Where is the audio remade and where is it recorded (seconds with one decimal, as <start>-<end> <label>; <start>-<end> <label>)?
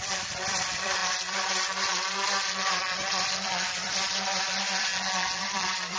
0.0-4.9 remade; 4.9-5.4 recorded; 5.4-6.0 remade